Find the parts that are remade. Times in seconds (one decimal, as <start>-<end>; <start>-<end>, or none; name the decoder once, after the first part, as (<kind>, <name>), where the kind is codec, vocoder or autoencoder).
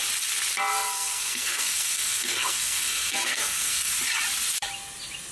0.7-3.9 (codec, SNAC)